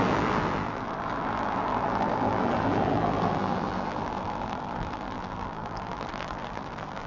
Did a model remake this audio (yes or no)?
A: yes